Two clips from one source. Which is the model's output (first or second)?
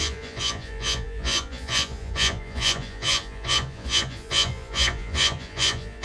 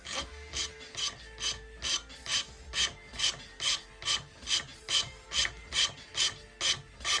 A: first